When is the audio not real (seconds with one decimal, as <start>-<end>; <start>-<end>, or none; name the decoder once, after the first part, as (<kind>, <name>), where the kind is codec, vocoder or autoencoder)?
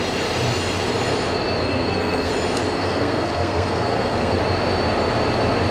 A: 1.6-2.3 (codec, SNAC); 2.8-4.4